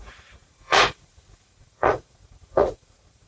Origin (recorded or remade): remade